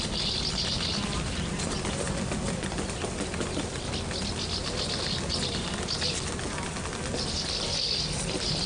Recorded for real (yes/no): yes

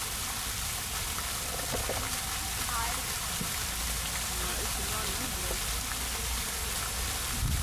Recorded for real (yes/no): yes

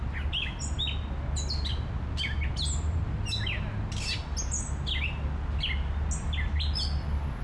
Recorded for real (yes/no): yes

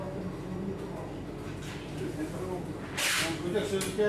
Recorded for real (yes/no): yes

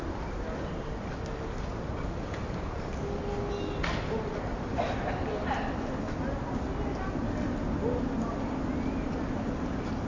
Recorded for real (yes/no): yes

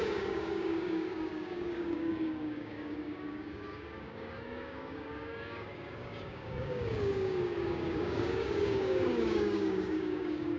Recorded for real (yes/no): no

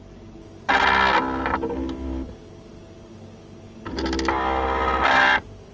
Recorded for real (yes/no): yes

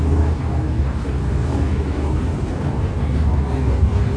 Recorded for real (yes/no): no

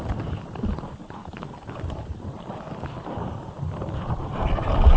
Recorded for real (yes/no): yes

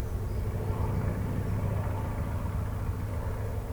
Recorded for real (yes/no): yes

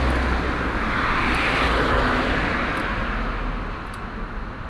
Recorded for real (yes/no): yes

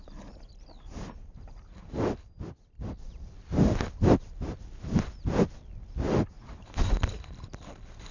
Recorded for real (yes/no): yes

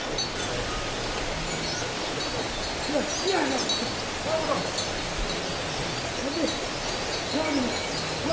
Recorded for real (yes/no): yes